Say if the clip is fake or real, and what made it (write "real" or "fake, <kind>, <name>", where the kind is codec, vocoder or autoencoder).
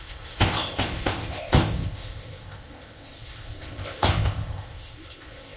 fake, codec, ZipCodec